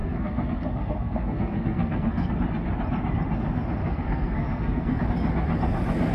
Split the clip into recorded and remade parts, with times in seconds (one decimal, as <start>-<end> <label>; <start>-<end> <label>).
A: 0.0-2.3 remade; 2.3-3.8 recorded; 3.8-5.0 remade; 5.0-6.1 recorded